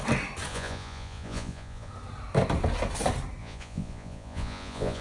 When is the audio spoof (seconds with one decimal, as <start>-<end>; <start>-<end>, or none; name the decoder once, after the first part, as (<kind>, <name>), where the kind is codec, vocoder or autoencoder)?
0.5-1.9 (vocoder, Vocos); 3.4-5.0